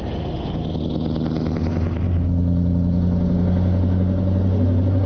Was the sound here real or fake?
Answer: real